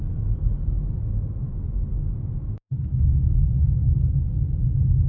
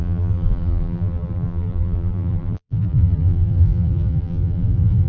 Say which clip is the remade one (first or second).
second